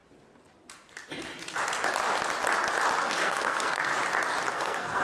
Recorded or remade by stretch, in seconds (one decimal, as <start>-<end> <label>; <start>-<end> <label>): 0.0-3.0 recorded; 3.0-3.9 remade; 3.9-4.5 recorded; 4.5-5.0 remade